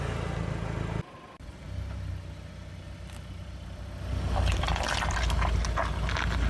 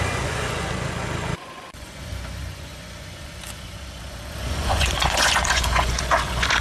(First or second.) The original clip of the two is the first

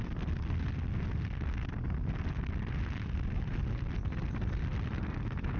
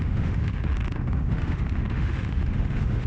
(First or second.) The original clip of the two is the first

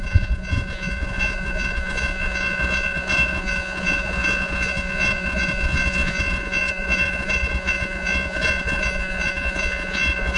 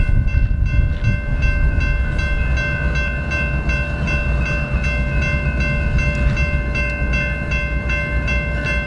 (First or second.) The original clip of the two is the second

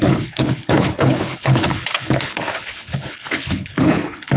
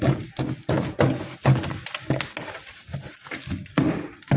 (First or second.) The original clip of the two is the second